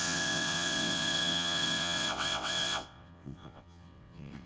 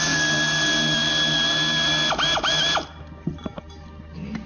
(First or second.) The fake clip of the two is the first